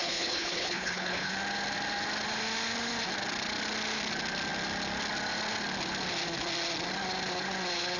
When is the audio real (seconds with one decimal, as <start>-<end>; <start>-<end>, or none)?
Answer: 1.3-8.0